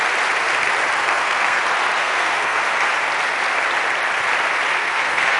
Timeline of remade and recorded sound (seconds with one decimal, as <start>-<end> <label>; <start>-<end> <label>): 0.0-1.0 recorded; 1.0-1.6 remade; 1.6-2.0 recorded; 2.0-2.6 remade; 2.6-4.7 recorded; 4.7-5.4 remade